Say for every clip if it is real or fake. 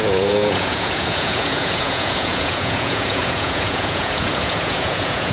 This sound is fake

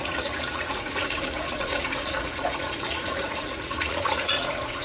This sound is fake